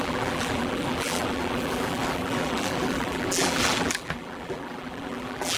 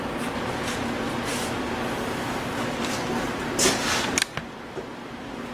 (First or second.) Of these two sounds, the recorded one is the second